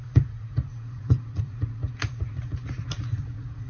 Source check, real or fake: fake